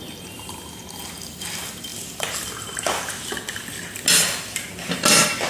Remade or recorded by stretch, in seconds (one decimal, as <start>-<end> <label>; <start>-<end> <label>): 0.0-5.5 recorded